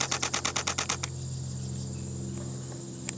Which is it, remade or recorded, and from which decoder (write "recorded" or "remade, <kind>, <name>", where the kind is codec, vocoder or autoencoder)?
recorded